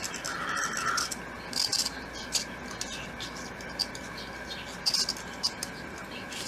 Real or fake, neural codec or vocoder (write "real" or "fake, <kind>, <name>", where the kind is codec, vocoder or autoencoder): real